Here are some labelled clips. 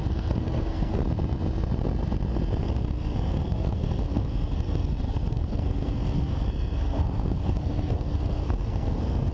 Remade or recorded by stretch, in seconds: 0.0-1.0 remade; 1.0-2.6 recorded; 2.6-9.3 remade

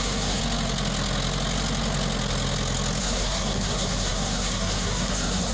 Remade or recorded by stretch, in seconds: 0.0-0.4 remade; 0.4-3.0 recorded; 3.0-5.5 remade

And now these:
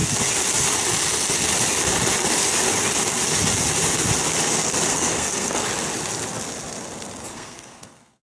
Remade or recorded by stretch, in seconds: 0.0-4.9 recorded; 4.9-5.6 remade; 5.6-7.3 recorded; 7.3-8.2 remade

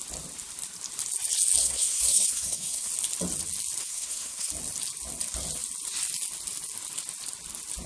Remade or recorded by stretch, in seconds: 0.0-1.6 recorded; 1.6-2.9 remade; 2.9-3.8 recorded; 3.8-4.5 remade; 4.5-7.9 recorded

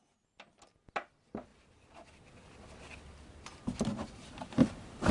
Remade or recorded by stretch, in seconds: 0.0-5.1 recorded

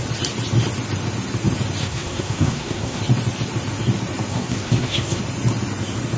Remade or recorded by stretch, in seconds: 0.0-1.8 recorded; 1.8-3.0 remade; 3.0-4.3 recorded; 4.3-5.2 remade; 5.2-6.2 recorded